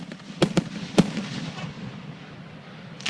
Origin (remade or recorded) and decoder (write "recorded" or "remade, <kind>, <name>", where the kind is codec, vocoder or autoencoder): remade, vocoder, BigVGAN v2